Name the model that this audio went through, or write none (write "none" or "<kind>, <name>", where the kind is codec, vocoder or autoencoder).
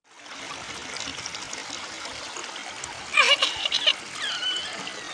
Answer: none